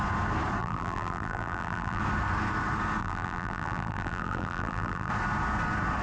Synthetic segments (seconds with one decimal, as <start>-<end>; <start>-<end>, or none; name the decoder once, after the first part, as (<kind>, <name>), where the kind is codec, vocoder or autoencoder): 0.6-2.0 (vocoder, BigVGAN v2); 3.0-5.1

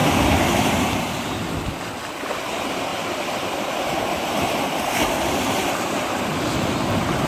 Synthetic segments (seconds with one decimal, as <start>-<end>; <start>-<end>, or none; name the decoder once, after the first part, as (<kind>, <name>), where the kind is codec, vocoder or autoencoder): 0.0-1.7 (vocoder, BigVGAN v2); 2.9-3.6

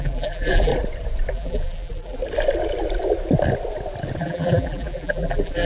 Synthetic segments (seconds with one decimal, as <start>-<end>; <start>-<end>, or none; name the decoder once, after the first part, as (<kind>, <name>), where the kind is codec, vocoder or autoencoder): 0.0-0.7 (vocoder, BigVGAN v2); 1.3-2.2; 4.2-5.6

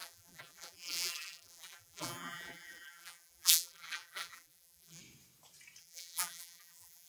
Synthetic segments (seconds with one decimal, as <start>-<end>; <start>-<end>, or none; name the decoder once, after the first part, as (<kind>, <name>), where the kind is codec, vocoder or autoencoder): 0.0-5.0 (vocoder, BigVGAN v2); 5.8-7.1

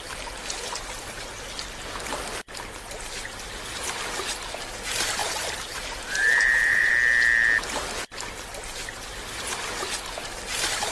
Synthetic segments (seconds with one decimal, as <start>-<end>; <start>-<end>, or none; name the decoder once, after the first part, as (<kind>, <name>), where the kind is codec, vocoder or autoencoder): 5.2-6.9 (vocoder, BigVGAN v2)

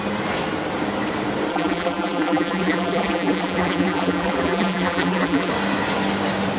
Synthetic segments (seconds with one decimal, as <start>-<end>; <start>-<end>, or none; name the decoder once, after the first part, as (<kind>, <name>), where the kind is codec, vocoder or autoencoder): 1.5-5.5 (vocoder, BigVGAN v2)

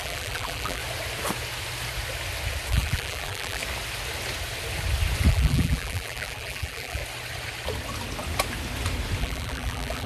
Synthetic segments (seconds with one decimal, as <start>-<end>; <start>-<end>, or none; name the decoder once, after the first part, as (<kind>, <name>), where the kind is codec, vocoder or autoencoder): 0.0-0.8 (vocoder, BigVGAN v2); 2.7-3.6; 5.3-7.0; 9.2-10.1

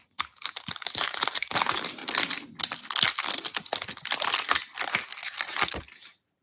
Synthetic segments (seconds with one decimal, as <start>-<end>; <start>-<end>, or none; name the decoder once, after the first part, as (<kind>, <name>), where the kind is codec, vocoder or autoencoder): 0.0-2.0 (vocoder, BigVGAN v2); 5.8-6.4